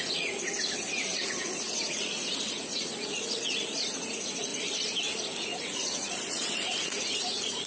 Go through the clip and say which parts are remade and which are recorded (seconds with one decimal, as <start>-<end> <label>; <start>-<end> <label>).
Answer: 0.0-0.4 remade; 0.4-1.3 recorded; 1.3-4.5 remade; 4.5-5.0 recorded; 5.0-7.7 remade